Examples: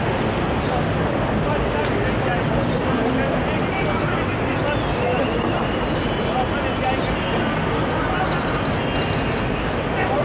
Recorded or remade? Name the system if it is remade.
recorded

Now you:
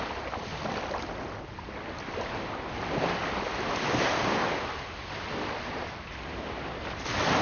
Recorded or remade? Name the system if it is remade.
recorded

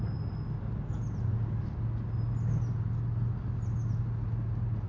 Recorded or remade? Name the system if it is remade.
recorded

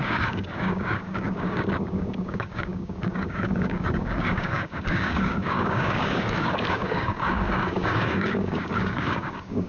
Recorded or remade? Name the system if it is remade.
remade, codec, DAC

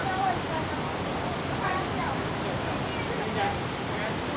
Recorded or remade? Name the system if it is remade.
recorded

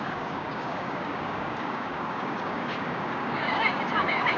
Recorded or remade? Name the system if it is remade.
remade, codec, DAC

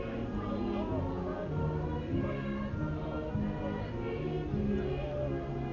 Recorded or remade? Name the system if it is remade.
recorded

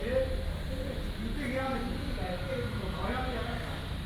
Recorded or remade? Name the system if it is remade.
recorded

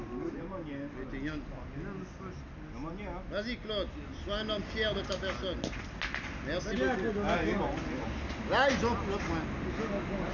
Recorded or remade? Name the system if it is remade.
recorded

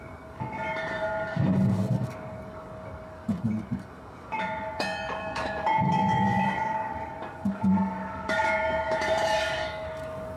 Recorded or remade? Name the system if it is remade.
remade, codec, DAC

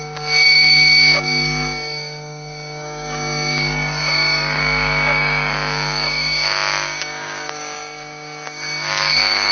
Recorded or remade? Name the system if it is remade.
remade, codec, DAC